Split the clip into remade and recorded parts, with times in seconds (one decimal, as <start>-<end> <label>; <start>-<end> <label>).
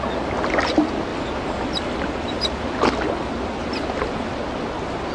0.0-1.1 recorded; 1.1-2.9 remade; 2.9-3.6 recorded; 3.6-4.4 remade; 4.4-5.1 recorded